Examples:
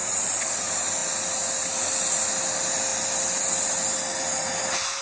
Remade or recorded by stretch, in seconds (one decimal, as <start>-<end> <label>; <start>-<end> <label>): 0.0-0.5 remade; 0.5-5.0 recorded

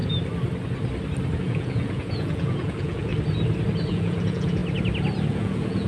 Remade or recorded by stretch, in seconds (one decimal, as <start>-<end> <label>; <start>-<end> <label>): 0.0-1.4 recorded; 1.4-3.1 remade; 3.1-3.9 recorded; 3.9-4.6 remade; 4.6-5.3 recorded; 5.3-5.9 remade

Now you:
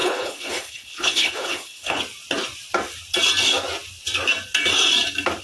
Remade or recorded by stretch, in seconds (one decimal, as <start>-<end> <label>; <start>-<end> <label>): 0.0-2.0 remade; 2.0-5.4 recorded

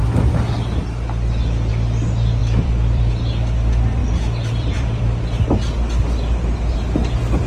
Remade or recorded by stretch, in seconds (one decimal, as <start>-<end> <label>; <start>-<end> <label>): 0.0-2.4 recorded; 2.4-3.1 remade; 3.1-4.0 recorded; 4.0-5.0 remade; 5.0-7.5 recorded

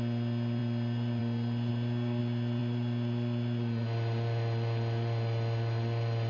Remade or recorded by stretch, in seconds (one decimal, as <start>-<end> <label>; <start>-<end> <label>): 0.0-6.3 recorded

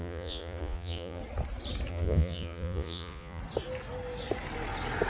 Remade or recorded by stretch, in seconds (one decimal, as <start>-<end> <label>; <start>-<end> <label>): 0.0-1.2 remade; 1.2-1.9 recorded; 1.9-3.4 remade; 3.4-5.1 recorded

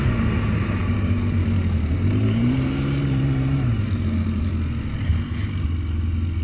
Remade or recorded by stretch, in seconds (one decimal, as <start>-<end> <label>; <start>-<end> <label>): 0.0-1.4 recorded; 1.4-4.5 remade; 4.5-6.4 recorded

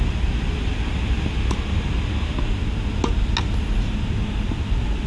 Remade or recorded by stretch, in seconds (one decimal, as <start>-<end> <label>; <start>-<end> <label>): 0.0-5.1 recorded